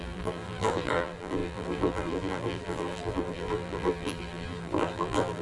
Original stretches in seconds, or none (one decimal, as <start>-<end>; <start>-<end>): none